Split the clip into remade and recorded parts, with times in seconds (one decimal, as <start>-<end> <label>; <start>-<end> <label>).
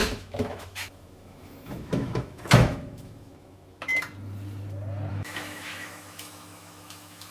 0.0-3.9 remade; 3.9-5.1 recorded; 5.1-7.3 remade